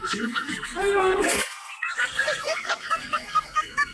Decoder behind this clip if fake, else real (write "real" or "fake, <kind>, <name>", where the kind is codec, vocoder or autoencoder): fake, codec, SNAC